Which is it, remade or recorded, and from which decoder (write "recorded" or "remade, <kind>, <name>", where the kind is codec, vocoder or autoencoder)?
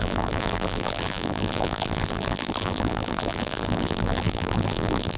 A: remade, vocoder, BigVGAN v2